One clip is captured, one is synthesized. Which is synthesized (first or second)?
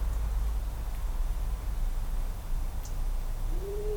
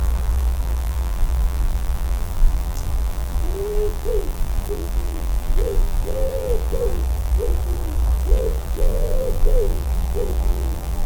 second